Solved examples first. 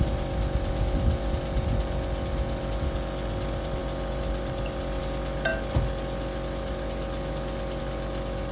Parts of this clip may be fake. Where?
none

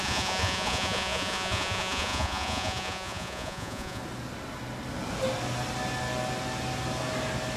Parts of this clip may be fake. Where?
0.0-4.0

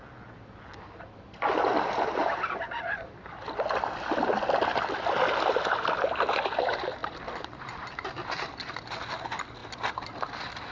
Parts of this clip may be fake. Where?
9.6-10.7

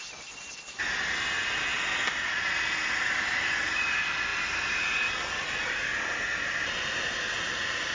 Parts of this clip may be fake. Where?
none